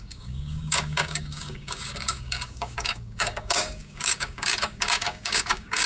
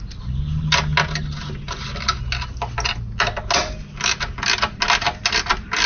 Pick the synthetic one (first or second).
first